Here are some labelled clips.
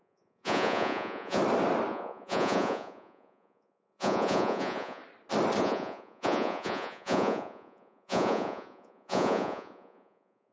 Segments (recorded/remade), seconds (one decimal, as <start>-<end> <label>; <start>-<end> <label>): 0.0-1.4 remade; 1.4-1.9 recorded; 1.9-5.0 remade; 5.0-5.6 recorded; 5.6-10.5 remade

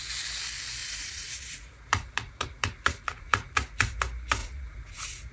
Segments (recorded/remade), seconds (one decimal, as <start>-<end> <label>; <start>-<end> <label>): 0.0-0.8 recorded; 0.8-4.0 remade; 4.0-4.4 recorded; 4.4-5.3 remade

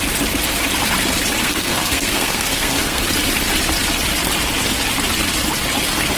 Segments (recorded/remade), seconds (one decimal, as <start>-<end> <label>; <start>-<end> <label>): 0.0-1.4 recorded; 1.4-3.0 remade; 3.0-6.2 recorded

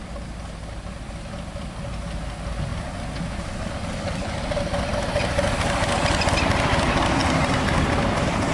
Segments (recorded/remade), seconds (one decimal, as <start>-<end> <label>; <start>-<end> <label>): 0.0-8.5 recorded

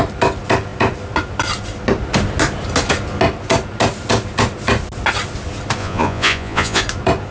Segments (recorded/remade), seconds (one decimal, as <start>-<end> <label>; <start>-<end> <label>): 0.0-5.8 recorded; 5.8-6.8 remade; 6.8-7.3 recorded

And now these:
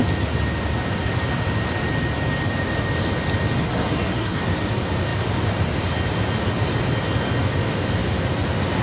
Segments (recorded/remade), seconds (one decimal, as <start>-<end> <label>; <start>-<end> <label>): 0.0-3.6 recorded; 3.6-4.4 remade; 4.4-8.8 recorded